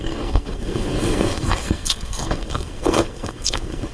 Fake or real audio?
fake